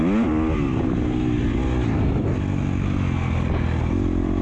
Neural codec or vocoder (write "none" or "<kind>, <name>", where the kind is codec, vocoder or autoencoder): none